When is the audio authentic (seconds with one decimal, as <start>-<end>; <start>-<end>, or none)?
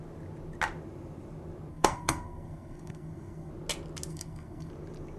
0.0-1.7; 3.5-4.1; 4.7-5.2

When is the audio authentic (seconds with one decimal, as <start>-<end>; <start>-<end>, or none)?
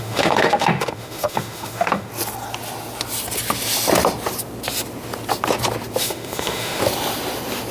2.1-6.0; 6.8-7.7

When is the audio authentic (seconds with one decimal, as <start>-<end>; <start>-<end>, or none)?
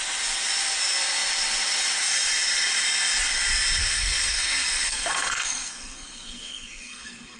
0.0-3.8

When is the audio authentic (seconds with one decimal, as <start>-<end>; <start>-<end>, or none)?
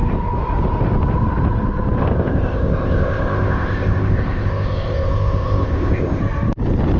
0.0-2.0; 6.2-7.0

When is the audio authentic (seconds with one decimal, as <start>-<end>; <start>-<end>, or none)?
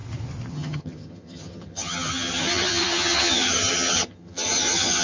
0.0-0.5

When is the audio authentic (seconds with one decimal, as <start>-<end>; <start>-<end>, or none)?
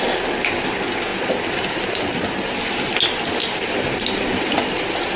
0.0-5.2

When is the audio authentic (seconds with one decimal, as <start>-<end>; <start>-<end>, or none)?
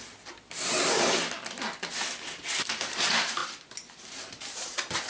0.0-5.1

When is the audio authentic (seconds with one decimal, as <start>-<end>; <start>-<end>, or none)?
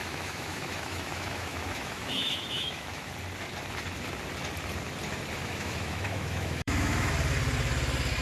3.1-5.4; 7.1-8.2